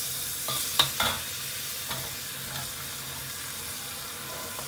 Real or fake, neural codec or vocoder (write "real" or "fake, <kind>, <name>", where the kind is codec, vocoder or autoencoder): real